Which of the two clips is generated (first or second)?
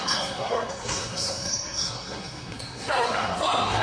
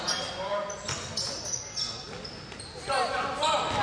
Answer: first